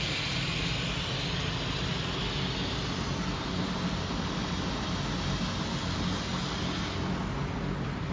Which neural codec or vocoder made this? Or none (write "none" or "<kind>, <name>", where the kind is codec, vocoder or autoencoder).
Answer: none